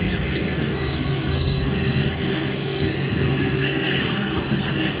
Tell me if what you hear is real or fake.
fake